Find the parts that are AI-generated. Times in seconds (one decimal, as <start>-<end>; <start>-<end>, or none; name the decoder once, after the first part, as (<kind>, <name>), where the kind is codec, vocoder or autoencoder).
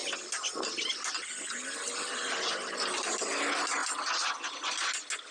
none